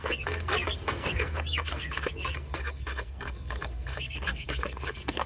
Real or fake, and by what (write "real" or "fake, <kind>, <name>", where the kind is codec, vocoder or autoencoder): fake, codec, SNAC